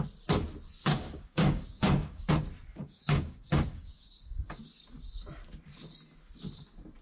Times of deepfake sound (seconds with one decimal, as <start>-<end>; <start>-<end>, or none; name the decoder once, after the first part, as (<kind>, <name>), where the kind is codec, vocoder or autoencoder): 0.8-2.3 (codec, DAC); 2.8-4.6